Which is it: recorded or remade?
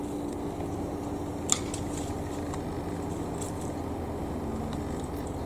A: recorded